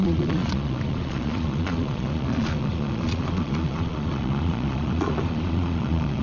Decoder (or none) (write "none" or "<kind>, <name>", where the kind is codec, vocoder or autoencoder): vocoder, Vocos